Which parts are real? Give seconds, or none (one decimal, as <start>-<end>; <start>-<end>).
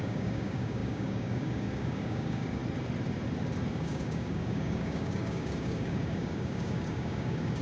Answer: 2.6-3.7